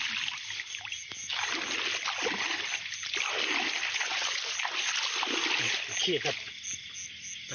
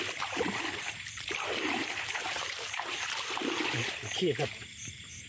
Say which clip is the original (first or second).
first